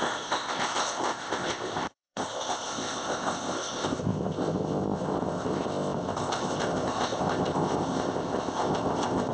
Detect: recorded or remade remade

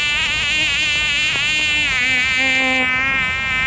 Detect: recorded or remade recorded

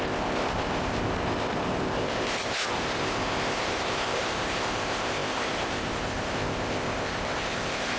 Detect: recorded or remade remade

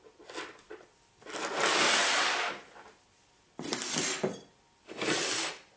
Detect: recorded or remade recorded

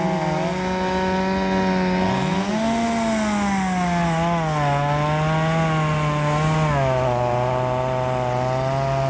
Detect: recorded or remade recorded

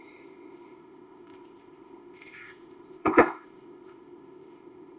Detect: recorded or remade remade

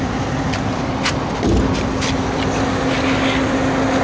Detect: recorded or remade recorded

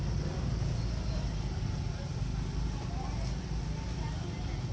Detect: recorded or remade recorded